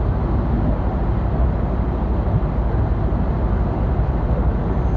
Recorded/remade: recorded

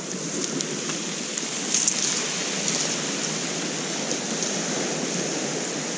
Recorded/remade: recorded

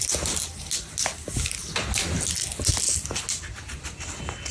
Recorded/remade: recorded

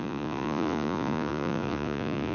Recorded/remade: remade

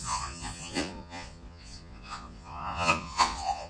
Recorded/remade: remade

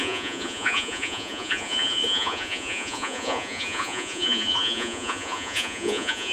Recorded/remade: remade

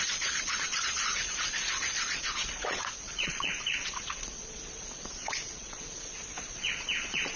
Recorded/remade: remade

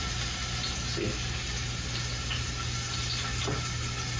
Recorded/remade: recorded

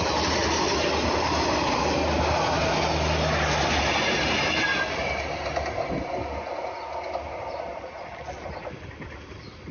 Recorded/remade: recorded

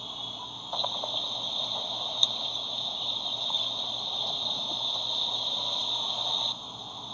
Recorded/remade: recorded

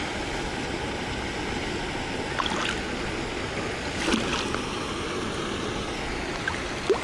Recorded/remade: recorded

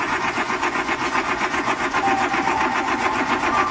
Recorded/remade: remade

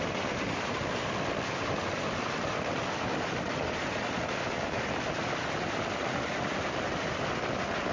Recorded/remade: recorded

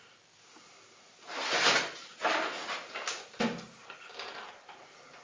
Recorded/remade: recorded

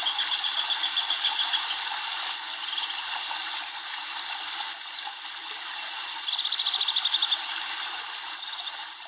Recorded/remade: recorded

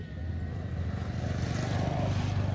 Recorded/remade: recorded